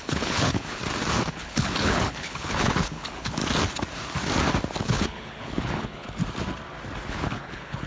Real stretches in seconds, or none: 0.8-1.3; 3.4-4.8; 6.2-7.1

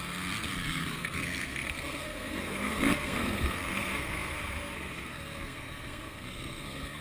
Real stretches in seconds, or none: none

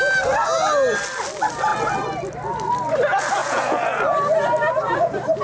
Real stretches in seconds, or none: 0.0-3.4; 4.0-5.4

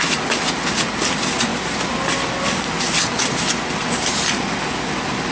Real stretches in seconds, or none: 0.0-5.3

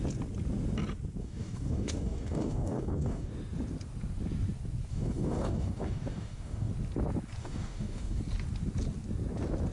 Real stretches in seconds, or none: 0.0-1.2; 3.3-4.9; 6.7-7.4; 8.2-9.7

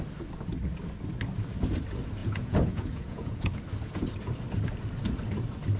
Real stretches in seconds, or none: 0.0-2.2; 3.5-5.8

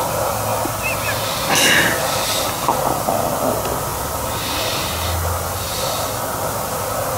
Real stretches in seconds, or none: 0.0-7.2